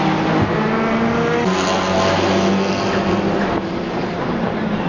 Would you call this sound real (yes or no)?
yes